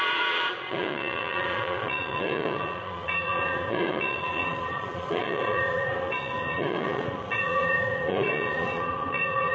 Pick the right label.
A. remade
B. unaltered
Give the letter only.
A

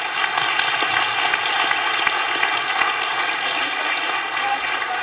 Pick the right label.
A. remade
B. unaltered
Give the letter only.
B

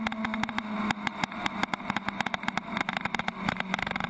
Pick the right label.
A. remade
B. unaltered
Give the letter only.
B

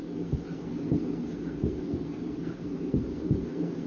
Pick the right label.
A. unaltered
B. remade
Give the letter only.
B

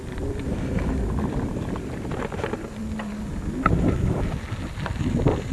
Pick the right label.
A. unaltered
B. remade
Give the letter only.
A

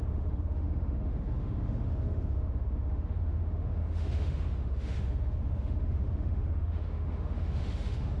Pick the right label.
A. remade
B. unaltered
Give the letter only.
A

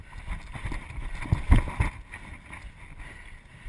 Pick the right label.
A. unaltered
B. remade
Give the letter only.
A